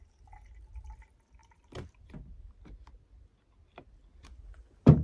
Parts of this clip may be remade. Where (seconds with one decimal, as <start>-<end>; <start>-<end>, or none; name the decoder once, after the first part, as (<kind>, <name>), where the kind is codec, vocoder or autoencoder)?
none